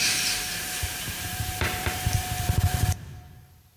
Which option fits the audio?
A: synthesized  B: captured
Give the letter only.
A